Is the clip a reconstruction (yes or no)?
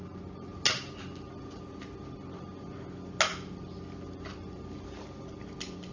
no